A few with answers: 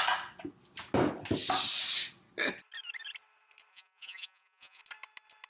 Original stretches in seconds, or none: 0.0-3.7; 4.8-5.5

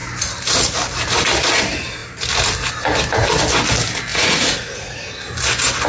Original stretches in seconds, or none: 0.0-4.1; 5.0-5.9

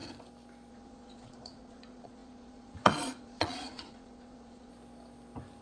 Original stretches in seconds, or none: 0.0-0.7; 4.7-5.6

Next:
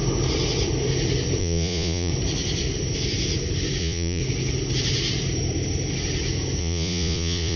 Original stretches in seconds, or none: 0.0-1.4; 2.1-3.8; 4.2-6.6